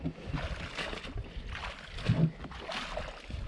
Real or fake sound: real